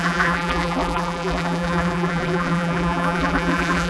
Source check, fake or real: fake